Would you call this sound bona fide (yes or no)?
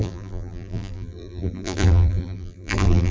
no